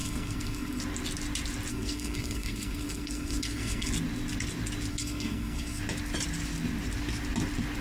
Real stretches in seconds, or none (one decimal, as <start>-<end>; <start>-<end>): 0.8-1.7; 3.9-4.9; 5.8-7.8